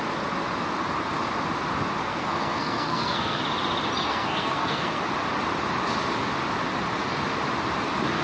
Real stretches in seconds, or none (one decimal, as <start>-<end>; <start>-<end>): 0.0-2.0; 3.4-4.1; 5.0-8.2